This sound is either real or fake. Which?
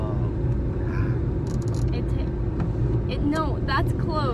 real